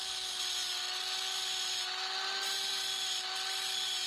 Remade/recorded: recorded